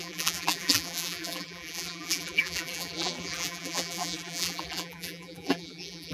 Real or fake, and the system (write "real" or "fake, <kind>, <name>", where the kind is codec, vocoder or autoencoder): fake, vocoder, BigVGAN v2